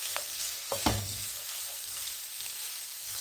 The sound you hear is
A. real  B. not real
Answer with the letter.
B